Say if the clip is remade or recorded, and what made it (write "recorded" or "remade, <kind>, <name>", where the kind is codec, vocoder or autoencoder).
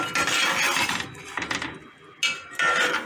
recorded